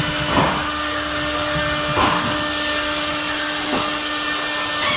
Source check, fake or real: real